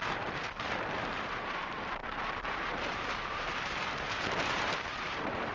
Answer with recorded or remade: remade